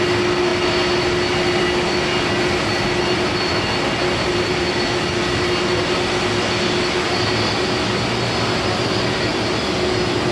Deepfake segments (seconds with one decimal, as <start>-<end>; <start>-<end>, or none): none